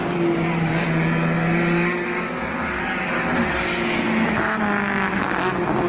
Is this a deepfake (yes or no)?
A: no